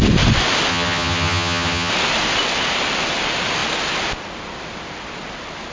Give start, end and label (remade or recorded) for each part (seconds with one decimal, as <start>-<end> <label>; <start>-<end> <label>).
0.0-0.7 recorded; 0.7-1.9 remade; 1.9-5.7 recorded